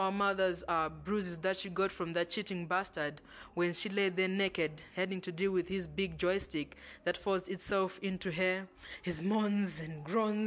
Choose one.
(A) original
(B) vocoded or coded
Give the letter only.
A